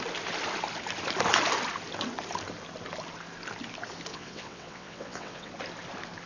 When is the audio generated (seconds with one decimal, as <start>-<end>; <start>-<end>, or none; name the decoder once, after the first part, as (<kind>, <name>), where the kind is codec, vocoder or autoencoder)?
4.1-5.5 (vocoder, WaveNeXt)